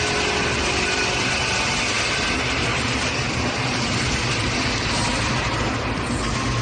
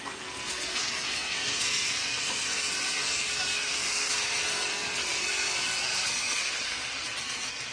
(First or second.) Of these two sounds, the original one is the first